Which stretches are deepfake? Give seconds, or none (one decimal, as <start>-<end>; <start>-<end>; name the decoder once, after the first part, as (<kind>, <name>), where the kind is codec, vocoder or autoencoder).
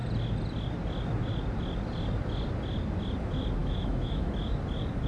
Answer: 3.6-4.3 (autoencoder, DAC-VAE)